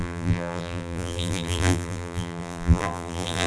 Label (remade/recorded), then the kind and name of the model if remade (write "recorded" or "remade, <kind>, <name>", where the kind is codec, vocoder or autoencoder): remade, vocoder, BigVGAN v2